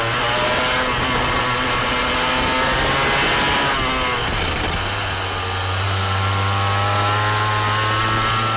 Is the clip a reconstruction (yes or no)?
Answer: no